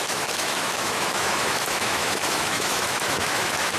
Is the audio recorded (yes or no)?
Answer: no